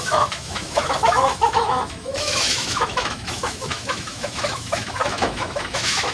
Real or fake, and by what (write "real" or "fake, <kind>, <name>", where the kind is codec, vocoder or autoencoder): fake, autoencoder, DAC-VAE